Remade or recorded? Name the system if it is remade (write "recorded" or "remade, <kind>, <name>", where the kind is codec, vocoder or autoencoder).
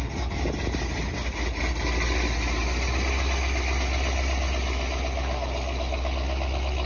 recorded